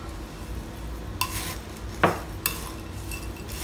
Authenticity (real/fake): real